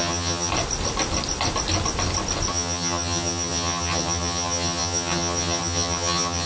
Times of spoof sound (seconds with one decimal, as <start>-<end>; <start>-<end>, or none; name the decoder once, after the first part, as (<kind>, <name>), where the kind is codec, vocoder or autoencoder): 0.0-0.5 (vocoder, HiFi-GAN); 2.5-6.5